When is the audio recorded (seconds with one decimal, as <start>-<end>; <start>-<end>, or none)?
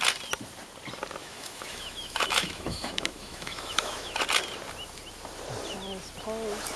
0.0-1.2; 4.2-6.8